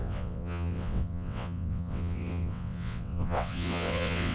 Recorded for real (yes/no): no